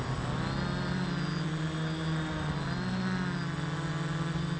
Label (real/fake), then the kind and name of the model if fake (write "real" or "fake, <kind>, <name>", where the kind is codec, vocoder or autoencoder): real